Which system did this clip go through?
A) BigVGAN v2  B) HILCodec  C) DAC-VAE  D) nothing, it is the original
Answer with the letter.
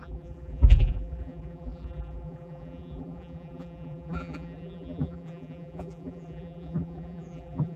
A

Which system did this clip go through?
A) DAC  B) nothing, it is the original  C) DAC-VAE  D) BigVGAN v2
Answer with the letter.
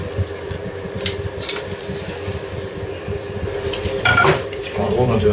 D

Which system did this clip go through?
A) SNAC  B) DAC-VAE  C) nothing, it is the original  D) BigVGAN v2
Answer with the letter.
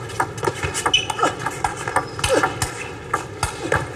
C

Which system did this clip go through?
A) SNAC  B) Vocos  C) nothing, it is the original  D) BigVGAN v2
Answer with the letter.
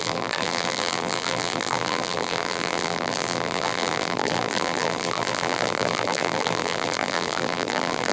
D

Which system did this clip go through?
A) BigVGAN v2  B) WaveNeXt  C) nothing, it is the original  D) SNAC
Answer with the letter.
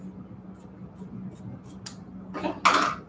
C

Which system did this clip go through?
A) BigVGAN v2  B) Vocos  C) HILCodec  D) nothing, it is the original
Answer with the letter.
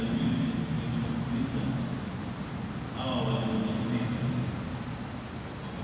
D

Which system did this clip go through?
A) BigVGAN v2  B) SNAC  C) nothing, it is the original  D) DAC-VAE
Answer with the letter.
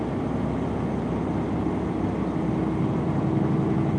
C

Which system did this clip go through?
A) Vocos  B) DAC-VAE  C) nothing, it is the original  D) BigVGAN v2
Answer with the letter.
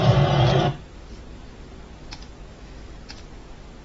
C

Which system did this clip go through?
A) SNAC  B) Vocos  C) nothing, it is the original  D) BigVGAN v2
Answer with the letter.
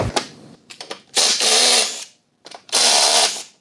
D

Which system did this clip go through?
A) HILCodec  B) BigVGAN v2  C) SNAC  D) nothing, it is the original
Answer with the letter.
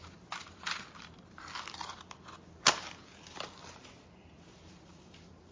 D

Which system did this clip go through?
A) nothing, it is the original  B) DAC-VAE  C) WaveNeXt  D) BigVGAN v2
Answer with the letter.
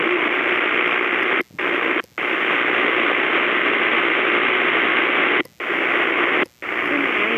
A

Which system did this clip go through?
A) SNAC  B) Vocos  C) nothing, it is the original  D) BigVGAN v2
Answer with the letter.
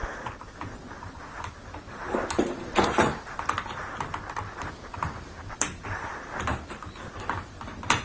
D